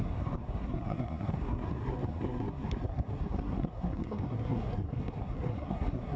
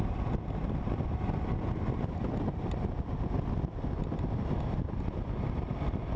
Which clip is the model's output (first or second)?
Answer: first